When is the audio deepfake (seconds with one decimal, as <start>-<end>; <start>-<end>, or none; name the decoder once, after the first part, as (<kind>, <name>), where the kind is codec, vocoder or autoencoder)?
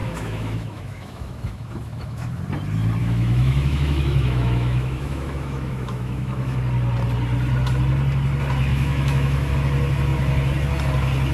0.0-2.4 (autoencoder, DAC-VAE); 3.0-6.6; 8.7-9.5